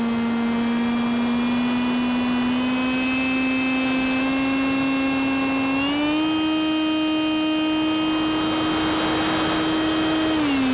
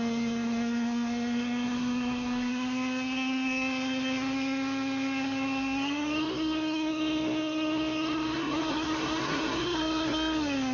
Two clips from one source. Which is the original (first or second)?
first